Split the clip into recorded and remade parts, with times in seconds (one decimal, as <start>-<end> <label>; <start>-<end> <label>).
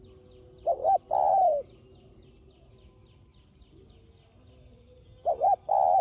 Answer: 0.0-6.0 recorded